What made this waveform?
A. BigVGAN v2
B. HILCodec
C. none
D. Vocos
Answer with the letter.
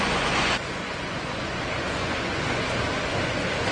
D